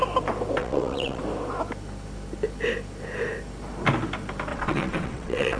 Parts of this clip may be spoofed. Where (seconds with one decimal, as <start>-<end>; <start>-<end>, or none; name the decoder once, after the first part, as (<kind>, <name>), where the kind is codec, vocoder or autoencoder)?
0.6-1.2 (vocoder, WaveNeXt); 4.5-5.6